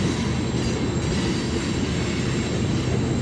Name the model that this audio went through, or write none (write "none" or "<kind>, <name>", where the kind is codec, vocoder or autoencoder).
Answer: none